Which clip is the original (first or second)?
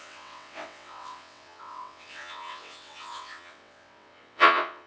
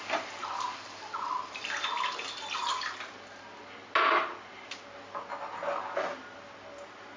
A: second